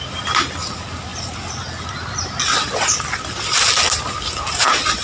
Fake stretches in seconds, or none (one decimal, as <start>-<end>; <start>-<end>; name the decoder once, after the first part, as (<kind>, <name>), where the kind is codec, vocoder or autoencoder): none